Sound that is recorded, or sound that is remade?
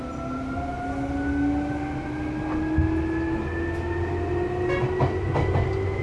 recorded